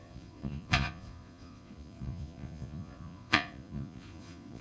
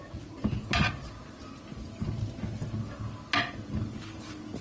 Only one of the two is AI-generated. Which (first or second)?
first